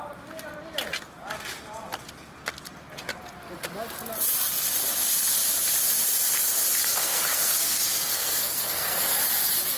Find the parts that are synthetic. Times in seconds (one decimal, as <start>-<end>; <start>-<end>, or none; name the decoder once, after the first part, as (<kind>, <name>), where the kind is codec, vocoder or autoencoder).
7.0-9.2 (codec, SNAC)